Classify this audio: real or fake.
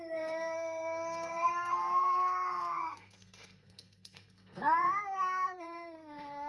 fake